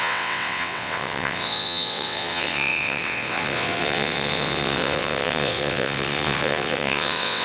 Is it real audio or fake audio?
fake